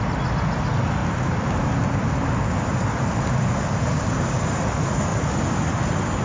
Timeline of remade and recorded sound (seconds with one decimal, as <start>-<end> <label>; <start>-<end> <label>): 0.0-6.2 recorded